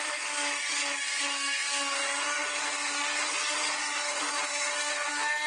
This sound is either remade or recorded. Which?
recorded